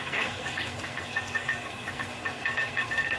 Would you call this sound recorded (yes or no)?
no